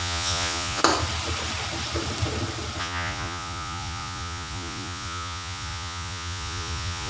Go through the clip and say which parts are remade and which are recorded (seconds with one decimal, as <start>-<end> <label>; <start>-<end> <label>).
0.0-0.8 remade; 0.8-2.8 recorded; 2.8-7.1 remade